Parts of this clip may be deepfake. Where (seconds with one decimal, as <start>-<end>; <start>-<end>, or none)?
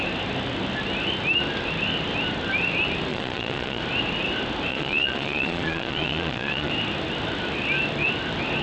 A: 3.1-3.8; 4.7-6.7